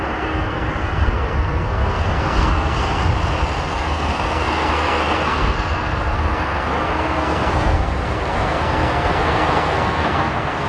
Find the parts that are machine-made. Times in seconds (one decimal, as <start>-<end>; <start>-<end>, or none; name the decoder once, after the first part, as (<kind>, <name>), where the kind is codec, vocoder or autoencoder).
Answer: 0.0-3.0 (codec, SNAC); 3.7-10.7